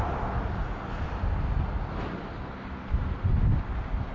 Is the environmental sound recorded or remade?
recorded